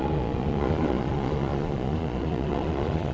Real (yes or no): no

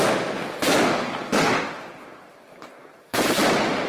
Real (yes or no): yes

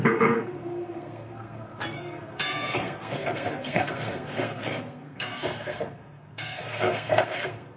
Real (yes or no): no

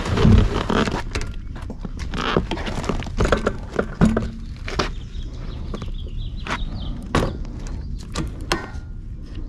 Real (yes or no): yes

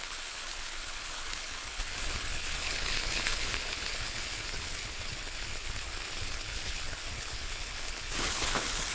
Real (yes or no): no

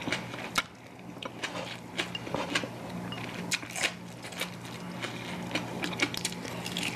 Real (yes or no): yes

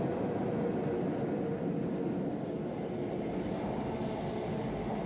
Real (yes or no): yes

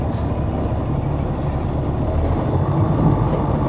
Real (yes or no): yes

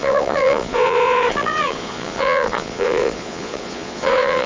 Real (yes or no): no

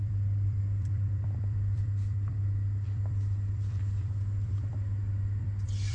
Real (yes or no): no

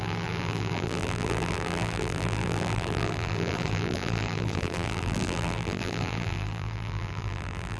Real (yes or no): no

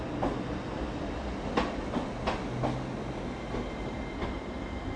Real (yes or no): yes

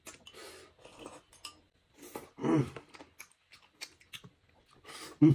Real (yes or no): yes